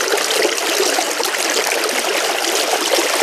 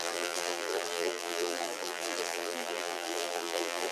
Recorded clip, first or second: first